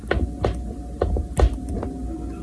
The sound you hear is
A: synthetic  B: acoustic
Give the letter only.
B